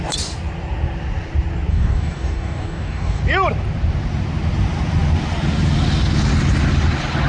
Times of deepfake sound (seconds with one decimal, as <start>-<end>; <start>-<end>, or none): 1.7-3.2